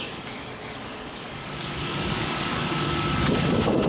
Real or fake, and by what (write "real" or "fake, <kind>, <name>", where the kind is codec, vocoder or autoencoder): fake, codec, DAC